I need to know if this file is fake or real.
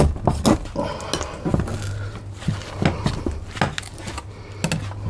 real